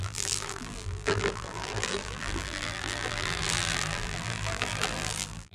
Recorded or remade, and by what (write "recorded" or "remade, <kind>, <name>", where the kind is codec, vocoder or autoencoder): remade, vocoder, BigVGAN v2